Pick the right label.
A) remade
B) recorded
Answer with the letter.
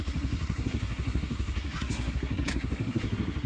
A